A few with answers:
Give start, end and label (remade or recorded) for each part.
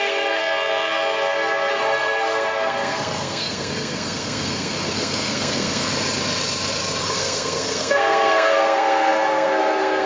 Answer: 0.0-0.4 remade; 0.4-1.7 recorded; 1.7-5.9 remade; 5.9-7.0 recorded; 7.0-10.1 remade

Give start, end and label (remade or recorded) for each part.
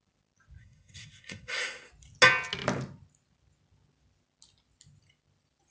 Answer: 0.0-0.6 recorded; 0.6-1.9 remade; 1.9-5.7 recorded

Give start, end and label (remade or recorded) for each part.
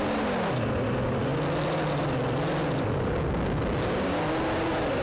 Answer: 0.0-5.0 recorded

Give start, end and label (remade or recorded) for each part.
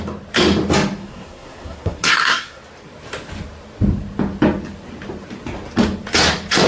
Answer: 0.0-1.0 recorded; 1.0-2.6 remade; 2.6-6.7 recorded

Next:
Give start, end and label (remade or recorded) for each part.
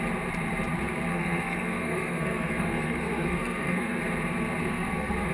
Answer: 0.0-1.1 recorded; 1.1-4.0 remade; 4.0-4.6 recorded; 4.6-5.3 remade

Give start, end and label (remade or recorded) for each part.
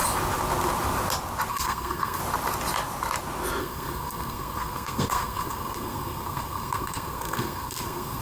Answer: 0.0-1.5 recorded; 1.5-2.2 remade; 2.2-3.6 recorded; 3.6-8.2 remade